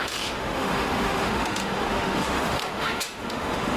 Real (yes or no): no